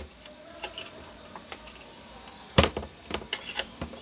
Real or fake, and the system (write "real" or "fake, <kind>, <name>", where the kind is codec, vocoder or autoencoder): fake, vocoder, BigVGAN v2